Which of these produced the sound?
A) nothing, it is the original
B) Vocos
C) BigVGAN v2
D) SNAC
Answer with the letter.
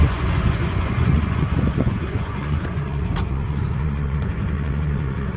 B